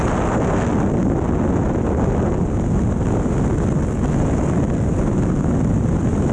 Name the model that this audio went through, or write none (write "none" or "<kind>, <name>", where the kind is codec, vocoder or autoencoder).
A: none